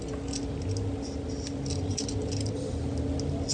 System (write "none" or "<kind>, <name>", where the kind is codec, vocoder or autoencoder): none